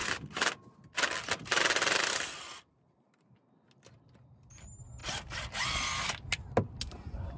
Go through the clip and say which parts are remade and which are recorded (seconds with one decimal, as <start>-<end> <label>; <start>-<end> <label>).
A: 0.0-7.4 recorded